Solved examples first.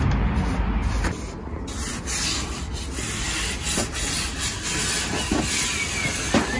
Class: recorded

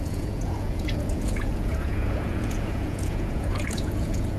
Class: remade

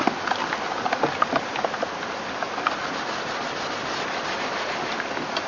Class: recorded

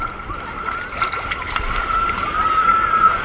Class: recorded